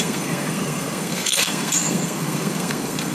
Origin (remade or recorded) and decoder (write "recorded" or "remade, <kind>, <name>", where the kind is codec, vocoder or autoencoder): remade, codec, SNAC